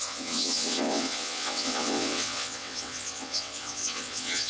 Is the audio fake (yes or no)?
yes